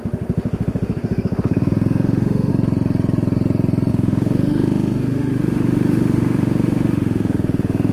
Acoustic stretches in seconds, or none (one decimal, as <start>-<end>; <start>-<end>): 2.5-3.9